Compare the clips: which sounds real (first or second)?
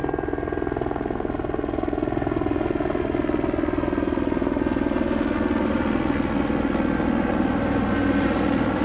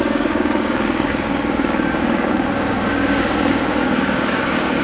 first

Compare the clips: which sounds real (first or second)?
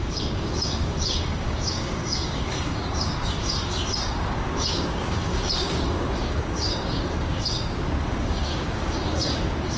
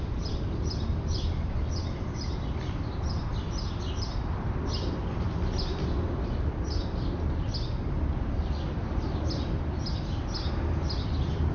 second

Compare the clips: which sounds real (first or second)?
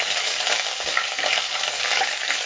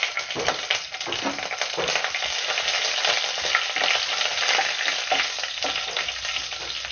second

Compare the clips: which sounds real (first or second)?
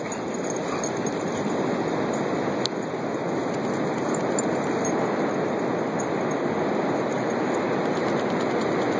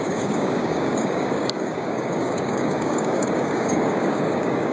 first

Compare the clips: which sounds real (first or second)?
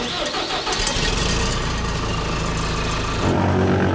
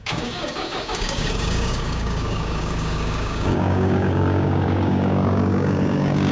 first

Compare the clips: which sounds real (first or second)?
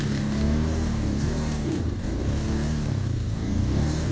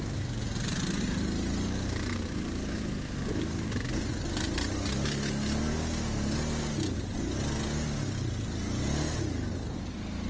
second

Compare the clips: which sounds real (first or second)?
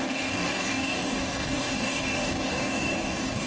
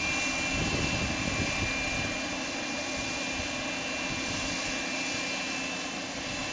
second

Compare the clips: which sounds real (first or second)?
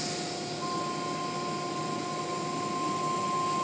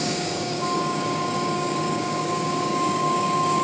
first